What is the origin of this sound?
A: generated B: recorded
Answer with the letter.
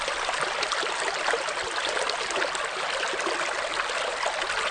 B